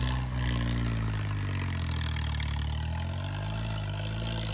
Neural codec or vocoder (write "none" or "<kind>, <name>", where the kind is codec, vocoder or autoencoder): none